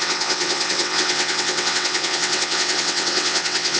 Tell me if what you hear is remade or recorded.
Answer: remade